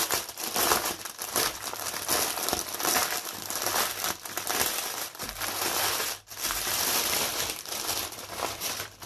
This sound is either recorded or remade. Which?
remade